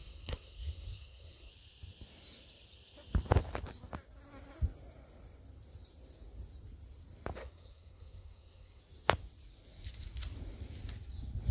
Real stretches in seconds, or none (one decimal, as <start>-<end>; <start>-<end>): 1.5-7.4; 8.8-11.5